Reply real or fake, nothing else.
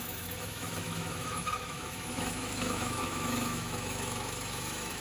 fake